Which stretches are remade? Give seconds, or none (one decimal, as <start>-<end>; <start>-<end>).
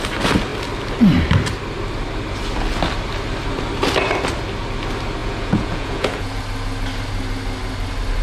5.2-6.4